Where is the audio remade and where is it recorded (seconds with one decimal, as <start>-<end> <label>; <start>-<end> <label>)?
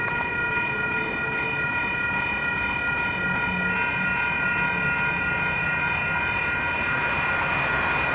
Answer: 0.0-8.1 recorded